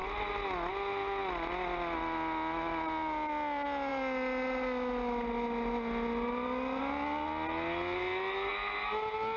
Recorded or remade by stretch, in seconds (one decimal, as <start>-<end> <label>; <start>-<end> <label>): 0.0-9.4 recorded